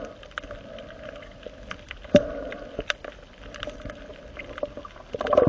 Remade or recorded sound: recorded